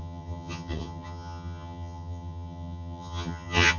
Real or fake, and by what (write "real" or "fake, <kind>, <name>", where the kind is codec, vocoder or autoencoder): fake, vocoder, HiFi-GAN